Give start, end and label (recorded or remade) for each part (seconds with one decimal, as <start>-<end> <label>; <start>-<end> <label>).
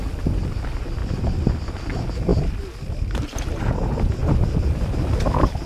0.0-5.7 recorded